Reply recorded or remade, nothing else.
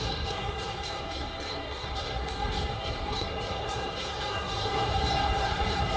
remade